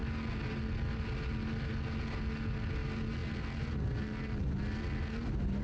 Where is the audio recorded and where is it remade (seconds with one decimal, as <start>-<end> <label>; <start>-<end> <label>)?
0.0-5.6 recorded